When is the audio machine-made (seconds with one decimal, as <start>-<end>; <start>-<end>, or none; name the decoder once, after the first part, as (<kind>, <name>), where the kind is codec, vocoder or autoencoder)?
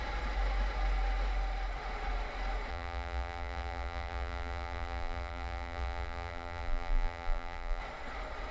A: 2.7-7.8 (vocoder, BigVGAN v2)